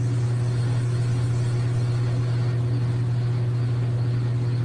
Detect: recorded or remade recorded